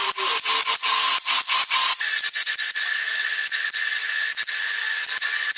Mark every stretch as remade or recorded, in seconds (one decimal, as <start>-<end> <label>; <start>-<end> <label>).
0.0-5.6 recorded